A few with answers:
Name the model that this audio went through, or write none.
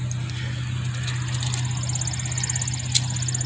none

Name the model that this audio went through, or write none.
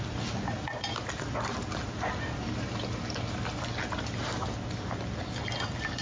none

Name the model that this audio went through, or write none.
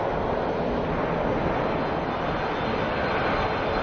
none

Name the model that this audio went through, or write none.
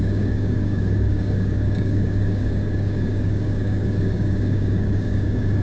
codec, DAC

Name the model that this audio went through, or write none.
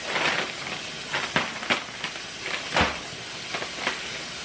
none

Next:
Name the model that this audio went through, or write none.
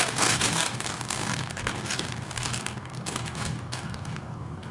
codec, DAC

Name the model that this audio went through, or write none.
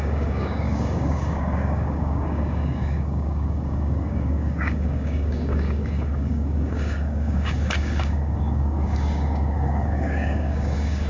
codec, DAC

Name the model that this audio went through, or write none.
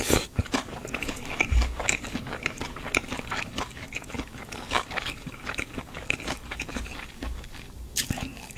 codec, DAC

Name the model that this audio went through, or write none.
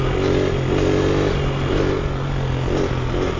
none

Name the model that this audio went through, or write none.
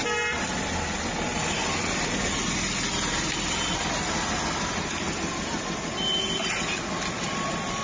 none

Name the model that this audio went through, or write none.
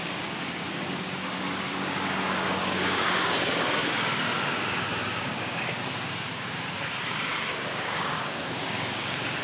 codec, DAC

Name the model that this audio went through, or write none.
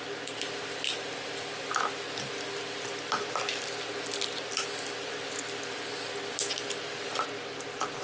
none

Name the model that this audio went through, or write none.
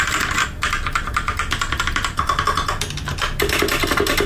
none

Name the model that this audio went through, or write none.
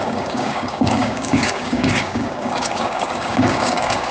codec, DAC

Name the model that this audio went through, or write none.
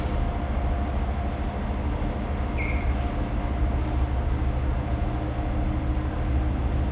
none